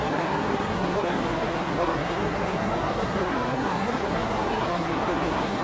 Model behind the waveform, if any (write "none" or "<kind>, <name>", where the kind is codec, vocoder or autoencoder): codec, SNAC